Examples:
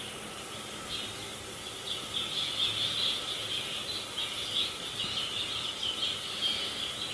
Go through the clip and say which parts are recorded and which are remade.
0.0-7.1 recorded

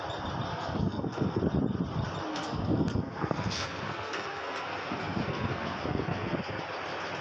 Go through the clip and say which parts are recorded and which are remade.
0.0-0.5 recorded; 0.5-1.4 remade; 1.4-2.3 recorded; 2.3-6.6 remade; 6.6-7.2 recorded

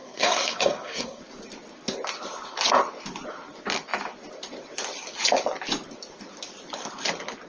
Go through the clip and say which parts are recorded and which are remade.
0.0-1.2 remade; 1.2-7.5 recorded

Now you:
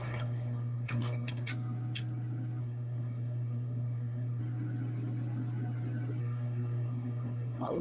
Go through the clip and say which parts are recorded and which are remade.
0.0-1.5 remade; 1.5-2.6 recorded; 2.6-4.4 remade; 4.4-6.2 recorded; 6.2-7.8 remade

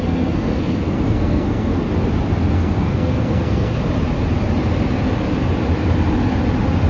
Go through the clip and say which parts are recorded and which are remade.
0.0-1.9 remade; 1.9-2.5 recorded; 2.5-3.7 remade; 3.7-6.9 recorded

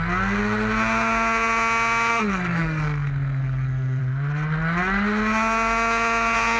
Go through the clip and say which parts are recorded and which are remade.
0.0-2.1 recorded; 2.1-4.0 remade; 4.0-6.6 recorded

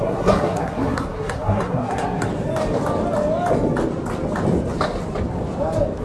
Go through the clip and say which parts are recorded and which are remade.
0.0-2.3 remade; 2.3-6.0 recorded